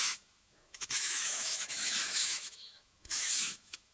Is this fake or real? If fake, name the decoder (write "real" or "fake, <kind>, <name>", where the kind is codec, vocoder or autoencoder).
fake, autoencoder, DAC-VAE